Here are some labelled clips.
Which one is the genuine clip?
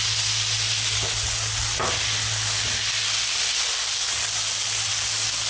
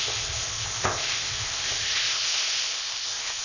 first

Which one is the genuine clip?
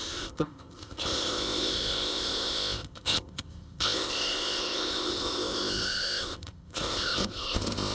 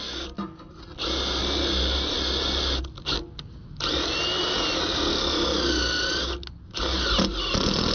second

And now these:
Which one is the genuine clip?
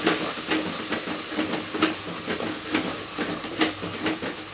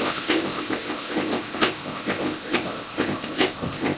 first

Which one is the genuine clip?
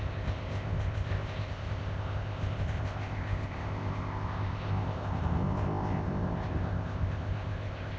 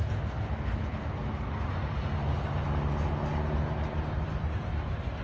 second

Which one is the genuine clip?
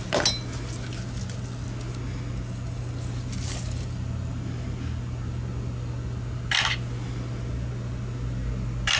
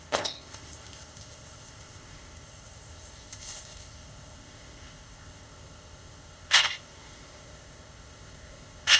first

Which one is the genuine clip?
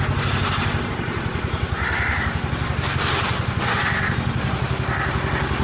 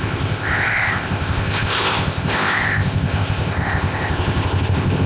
first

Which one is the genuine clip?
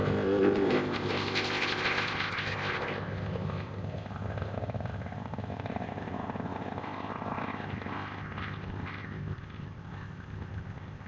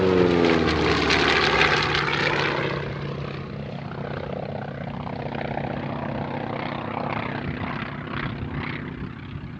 second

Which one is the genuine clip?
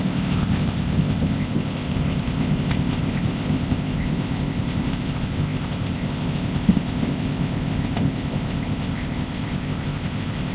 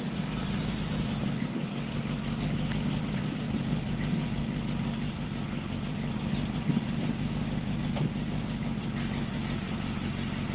second